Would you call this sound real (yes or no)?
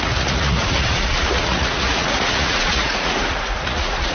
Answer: no